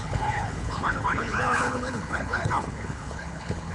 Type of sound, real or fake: fake